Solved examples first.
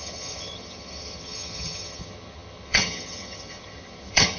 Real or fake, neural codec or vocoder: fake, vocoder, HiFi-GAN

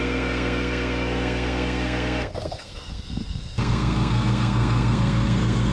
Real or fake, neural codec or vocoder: fake, codec, SNAC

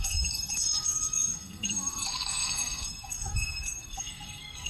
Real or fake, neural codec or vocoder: fake, codec, SNAC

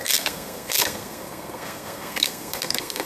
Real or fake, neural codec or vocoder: fake, codec, SNAC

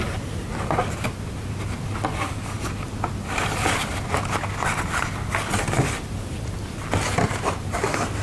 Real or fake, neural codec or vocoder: real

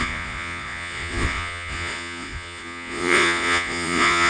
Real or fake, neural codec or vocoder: fake, vocoder, Vocos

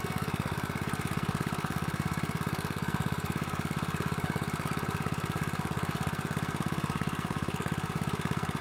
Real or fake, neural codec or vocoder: fake, codec, SNAC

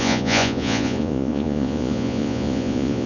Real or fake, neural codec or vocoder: fake, vocoder, Vocos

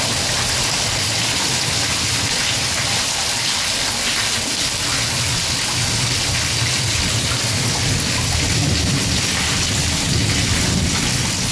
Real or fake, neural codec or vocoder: real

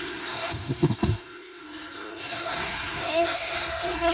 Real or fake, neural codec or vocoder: fake, codec, SNAC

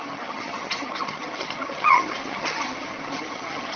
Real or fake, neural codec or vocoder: fake, vocoder, HiFi-GAN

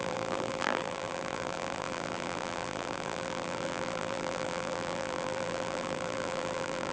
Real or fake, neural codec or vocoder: fake, vocoder, BigVGAN v2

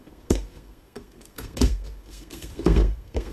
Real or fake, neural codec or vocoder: fake, codec, SNAC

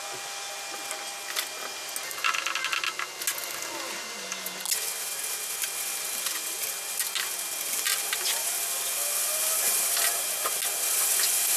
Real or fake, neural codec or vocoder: real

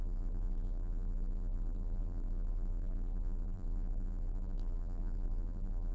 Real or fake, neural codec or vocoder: fake, vocoder, BigVGAN v2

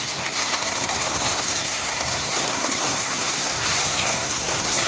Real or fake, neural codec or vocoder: fake, codec, SNAC